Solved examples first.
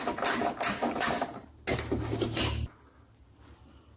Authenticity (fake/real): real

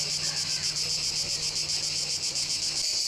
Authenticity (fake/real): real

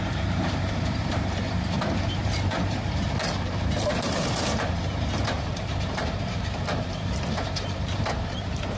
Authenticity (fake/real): fake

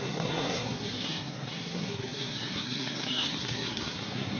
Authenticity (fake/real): fake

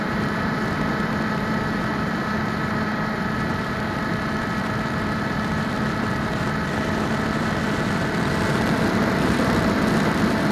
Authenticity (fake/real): fake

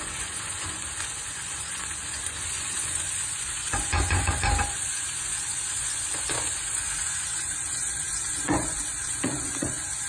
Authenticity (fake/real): fake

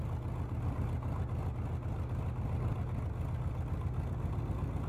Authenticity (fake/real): real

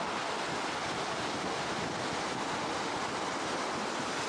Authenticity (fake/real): real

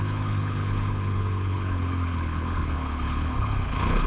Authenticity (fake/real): fake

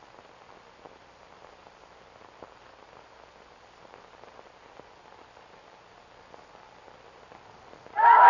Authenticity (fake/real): real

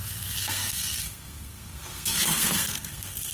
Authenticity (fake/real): fake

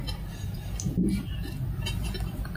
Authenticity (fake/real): real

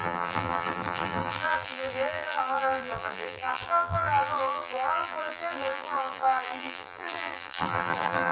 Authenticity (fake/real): fake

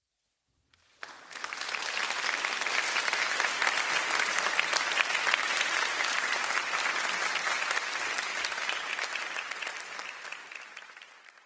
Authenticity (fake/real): real